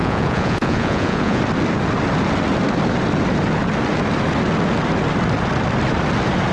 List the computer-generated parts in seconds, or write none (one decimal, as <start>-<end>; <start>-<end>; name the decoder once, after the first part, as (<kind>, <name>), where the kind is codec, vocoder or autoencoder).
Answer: 0.0-1.4 (vocoder, Vocos)

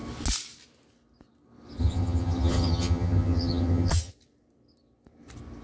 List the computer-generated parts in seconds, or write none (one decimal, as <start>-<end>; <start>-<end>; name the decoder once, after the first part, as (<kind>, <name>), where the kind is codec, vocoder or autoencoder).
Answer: 1.8-4.1 (vocoder, HiFi-GAN)

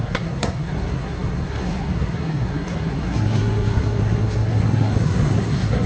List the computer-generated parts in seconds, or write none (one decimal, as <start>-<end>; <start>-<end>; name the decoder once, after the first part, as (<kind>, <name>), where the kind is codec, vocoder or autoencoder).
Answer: 0.0-5.9 (codec, SNAC)

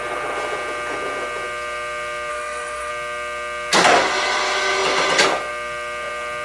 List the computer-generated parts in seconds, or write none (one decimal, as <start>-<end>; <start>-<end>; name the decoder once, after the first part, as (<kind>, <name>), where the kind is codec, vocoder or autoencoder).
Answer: 2.3-2.9 (codec, SNAC)